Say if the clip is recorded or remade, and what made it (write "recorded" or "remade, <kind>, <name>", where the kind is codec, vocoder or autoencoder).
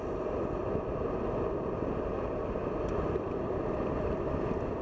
recorded